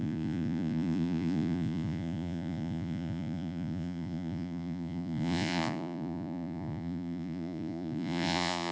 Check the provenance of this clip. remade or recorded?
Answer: remade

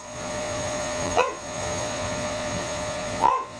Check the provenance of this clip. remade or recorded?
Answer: remade